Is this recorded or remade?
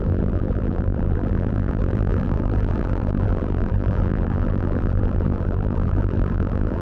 remade